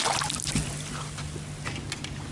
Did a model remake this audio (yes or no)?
no